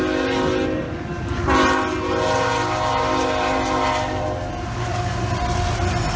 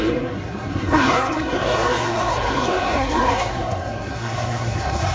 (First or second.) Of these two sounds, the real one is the first